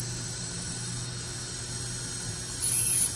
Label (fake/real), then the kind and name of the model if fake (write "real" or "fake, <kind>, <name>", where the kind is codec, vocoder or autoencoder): real